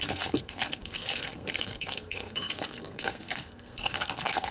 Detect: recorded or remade remade